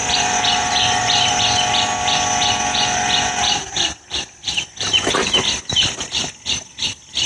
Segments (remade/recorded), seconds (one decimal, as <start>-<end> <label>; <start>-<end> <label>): 0.0-1.3 remade; 1.3-7.3 recorded